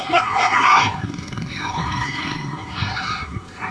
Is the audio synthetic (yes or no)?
yes